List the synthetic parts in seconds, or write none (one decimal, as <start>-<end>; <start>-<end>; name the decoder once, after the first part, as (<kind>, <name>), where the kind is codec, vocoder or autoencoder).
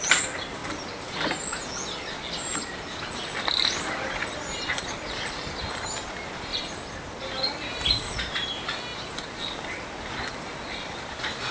none